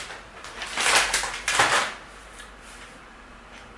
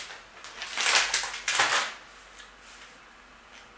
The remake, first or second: first